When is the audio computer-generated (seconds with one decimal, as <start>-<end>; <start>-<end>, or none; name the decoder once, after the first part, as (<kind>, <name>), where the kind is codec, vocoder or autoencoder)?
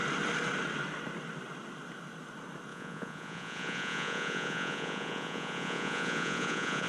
2.7-6.9 (vocoder, Vocos)